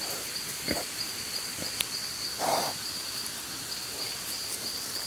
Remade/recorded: remade